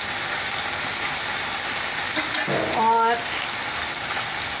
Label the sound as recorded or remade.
recorded